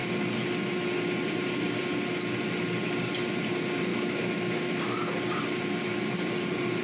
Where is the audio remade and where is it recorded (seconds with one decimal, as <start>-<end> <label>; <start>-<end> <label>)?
0.0-3.9 recorded; 3.9-4.8 remade; 4.8-6.8 recorded